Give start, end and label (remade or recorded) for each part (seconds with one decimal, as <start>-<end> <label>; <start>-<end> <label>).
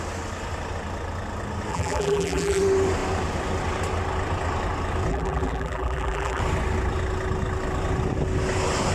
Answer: 0.0-1.7 recorded; 1.7-2.6 remade; 2.6-5.1 recorded; 5.1-6.4 remade; 6.4-8.9 recorded